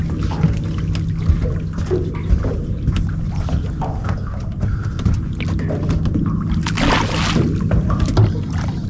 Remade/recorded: recorded